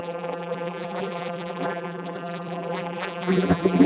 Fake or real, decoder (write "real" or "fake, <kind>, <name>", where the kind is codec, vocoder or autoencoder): fake, vocoder, BigVGAN v2